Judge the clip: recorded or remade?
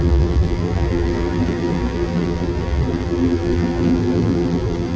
remade